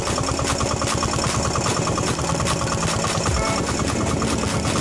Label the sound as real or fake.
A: real